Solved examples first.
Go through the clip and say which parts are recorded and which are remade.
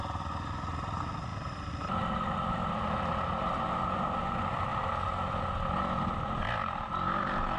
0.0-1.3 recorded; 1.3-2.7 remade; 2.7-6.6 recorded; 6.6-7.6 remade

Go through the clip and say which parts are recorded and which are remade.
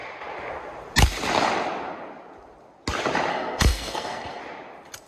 0.0-3.3 recorded; 3.3-4.4 remade; 4.4-5.1 recorded